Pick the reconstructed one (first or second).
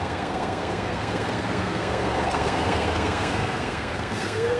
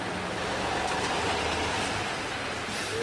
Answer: first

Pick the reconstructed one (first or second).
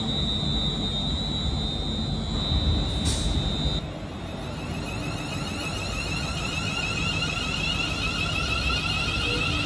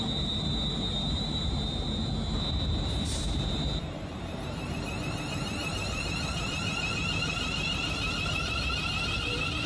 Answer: second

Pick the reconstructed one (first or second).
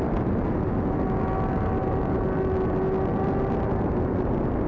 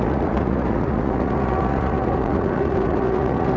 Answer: second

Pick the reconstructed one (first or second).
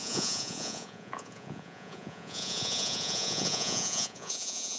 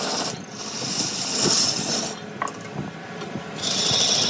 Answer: first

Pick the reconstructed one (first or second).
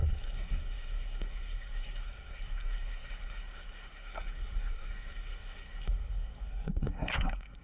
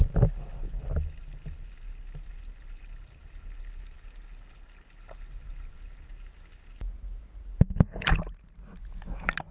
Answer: first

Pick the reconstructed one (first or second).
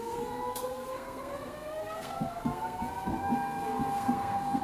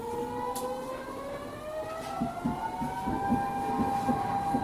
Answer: first